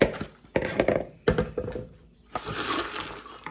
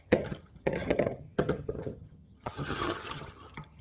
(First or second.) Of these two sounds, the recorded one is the first